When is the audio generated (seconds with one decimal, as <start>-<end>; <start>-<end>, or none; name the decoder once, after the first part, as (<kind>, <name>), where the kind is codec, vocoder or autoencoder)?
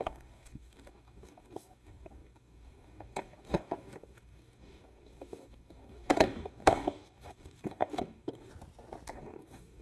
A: 0.0-8.5 (codec, DAC); 9.1-9.8